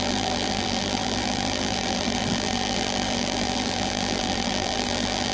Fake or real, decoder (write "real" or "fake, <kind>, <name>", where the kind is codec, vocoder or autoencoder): fake, vocoder, BigVGAN v2